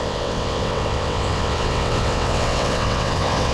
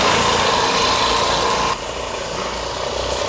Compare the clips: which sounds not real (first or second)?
first